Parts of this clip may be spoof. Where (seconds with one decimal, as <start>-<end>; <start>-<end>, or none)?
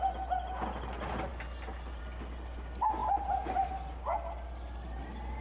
none